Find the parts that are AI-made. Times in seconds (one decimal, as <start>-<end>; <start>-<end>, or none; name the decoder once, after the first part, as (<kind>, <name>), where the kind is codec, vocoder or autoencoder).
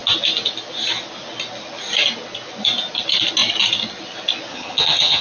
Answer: 4.5-5.2 (vocoder, HiFi-GAN)